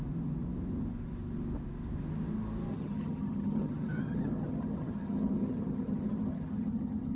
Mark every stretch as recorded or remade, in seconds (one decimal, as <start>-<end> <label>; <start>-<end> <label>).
0.0-2.7 recorded; 2.7-7.2 remade